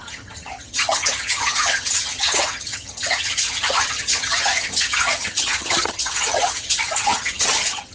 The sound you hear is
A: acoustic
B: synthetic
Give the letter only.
B